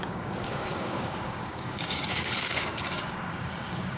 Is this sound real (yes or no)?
no